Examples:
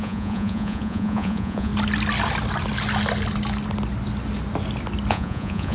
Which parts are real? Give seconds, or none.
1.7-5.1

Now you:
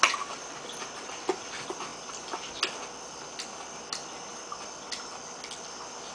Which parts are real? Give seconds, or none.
0.0-6.1

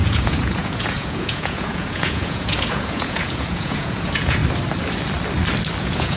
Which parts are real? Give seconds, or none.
4.4-5.8

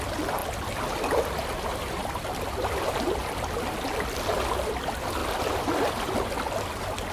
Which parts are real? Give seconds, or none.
0.0-7.1

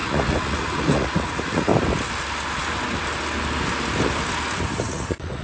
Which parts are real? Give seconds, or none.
1.7-4.9

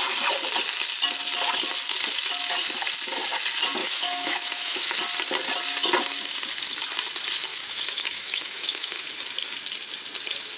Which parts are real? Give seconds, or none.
0.0-3.8; 5.0-7.5; 9.0-10.6

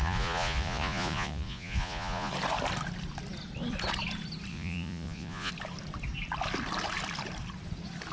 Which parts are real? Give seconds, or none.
2.3-4.5; 5.5-8.1